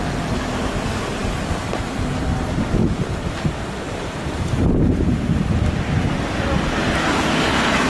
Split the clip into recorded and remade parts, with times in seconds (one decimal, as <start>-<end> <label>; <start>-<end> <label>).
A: 0.0-2.8 remade; 2.8-4.0 recorded; 4.0-7.9 remade